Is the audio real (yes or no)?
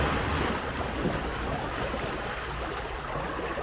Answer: yes